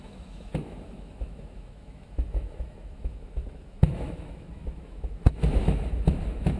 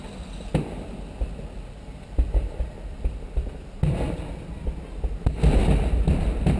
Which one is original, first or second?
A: second